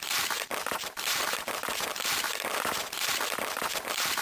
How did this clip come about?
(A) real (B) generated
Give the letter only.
B